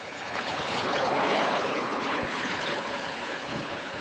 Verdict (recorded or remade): remade